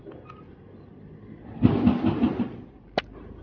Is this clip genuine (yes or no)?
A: yes